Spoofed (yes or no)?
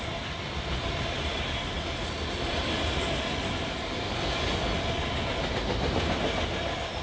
no